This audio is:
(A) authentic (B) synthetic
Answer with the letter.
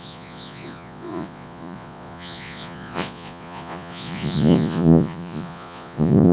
B